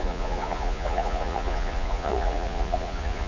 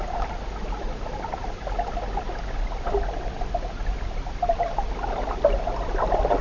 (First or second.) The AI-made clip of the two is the first